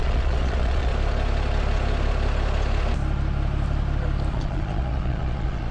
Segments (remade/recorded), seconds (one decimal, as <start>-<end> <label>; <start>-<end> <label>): 0.0-0.9 remade; 0.9-4.3 recorded; 4.3-5.7 remade